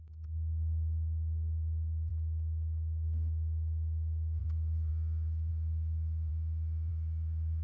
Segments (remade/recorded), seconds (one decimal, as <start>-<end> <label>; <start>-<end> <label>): 0.0-2.1 remade; 2.1-4.4 recorded; 4.4-4.9 remade; 4.9-5.5 recorded; 5.5-6.3 remade; 6.3-6.9 recorded; 6.9-7.6 remade

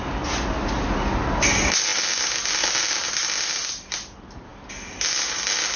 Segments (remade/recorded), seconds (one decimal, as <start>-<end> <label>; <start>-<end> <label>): 0.0-5.8 recorded